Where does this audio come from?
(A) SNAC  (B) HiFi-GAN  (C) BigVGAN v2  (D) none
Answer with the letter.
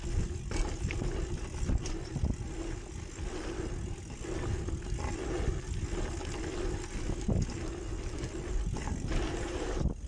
D